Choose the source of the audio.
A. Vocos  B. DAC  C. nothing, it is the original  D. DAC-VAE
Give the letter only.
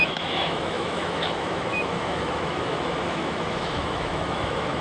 D